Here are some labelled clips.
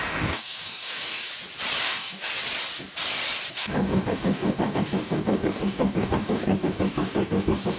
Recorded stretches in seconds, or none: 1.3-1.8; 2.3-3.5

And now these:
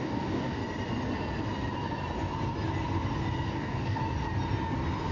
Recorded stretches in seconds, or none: 0.6-3.5; 4.0-5.1

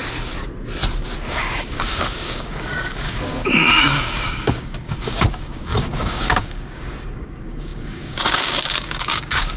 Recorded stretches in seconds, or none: 0.0-1.3

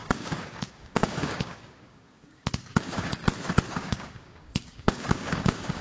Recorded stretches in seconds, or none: 3.2-3.7